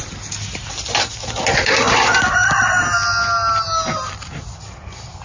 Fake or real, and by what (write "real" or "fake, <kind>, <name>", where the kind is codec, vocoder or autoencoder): real